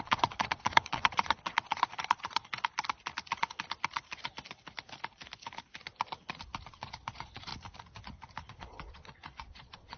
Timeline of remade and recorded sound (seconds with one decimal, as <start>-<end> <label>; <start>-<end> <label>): 0.0-2.5 remade; 2.5-6.7 recorded; 6.7-7.5 remade; 7.5-8.5 recorded; 8.5-10.0 remade